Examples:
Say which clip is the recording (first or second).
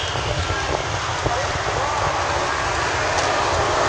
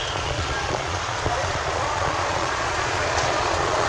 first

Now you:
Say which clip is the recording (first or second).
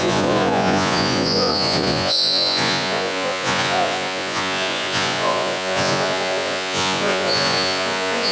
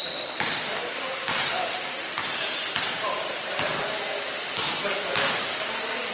second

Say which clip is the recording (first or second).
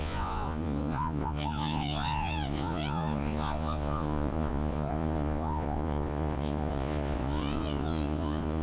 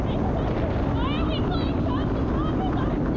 second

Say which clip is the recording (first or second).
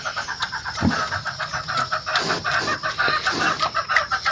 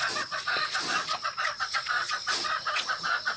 first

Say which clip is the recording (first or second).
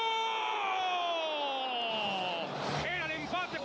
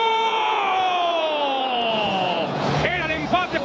first